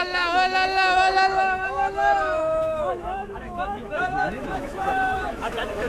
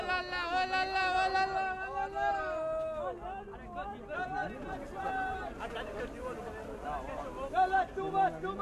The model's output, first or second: first